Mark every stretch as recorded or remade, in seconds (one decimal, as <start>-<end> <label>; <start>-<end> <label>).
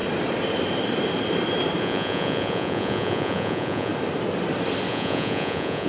0.0-1.8 recorded; 1.8-3.9 remade; 3.9-4.9 recorded; 4.9-5.9 remade